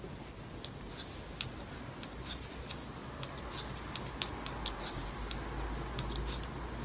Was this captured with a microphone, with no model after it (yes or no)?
yes